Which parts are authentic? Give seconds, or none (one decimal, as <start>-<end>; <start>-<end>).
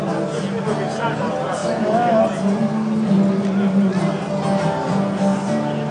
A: 0.0-1.6; 2.2-5.9